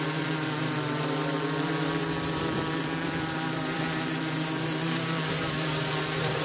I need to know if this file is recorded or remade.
remade